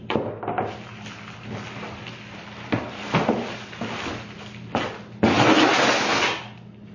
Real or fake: real